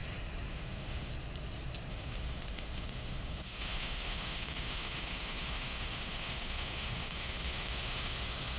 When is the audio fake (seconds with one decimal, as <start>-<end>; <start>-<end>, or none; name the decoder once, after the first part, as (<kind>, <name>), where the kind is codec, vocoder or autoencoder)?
0.5-1.1 (autoencoder, DAC-VAE); 1.9-8.6